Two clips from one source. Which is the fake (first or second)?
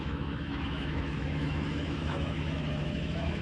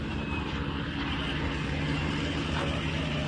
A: first